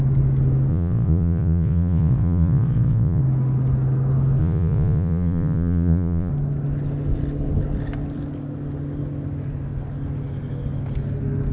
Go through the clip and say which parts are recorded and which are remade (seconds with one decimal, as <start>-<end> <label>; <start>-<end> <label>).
0.0-0.7 recorded; 0.7-3.2 remade; 3.2-4.4 recorded; 4.4-6.3 remade; 6.3-11.5 recorded